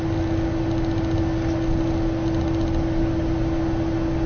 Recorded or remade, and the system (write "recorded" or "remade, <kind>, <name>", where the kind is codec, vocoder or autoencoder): recorded